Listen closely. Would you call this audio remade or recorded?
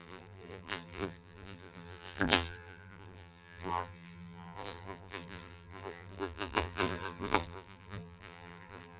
remade